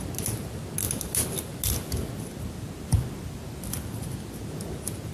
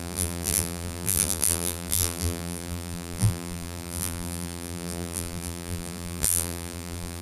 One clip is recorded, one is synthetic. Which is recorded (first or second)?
first